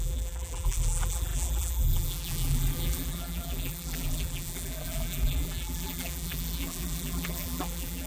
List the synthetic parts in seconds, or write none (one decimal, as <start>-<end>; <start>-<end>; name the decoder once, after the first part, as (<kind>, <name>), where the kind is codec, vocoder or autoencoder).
0.0-8.1 (vocoder, BigVGAN v2)